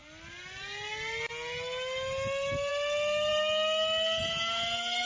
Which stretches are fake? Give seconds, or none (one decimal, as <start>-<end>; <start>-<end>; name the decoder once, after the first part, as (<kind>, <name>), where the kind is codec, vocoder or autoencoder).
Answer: none